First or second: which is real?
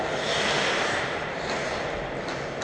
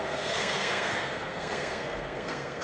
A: first